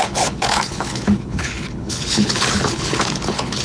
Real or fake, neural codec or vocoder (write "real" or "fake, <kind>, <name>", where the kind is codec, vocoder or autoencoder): fake, codec, HILCodec